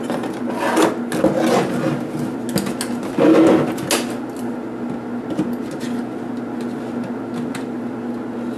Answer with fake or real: real